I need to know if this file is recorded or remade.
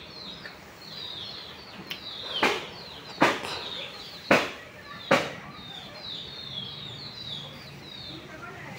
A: recorded